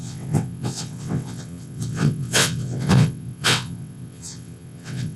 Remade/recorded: remade